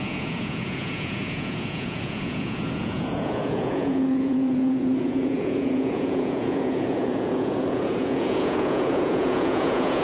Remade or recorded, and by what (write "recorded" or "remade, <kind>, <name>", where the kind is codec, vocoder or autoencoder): remade, vocoder, Vocos